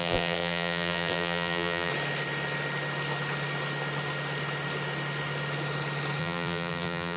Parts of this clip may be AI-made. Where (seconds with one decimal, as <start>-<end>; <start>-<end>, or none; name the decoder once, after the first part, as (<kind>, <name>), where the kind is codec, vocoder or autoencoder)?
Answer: 0.0-1.9 (vocoder, BigVGAN v2); 6.2-7.2